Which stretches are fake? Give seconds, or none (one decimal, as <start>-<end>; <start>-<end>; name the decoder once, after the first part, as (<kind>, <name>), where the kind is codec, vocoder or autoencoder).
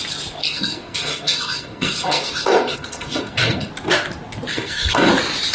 0.4-3.7 (codec, SNAC); 4.5-5.1